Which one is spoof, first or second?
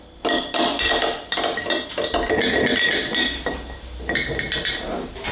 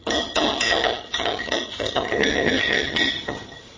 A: second